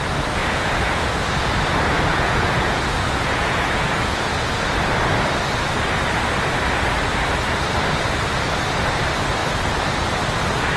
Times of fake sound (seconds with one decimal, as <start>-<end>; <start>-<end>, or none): 0.4-1.2; 2.1-4.5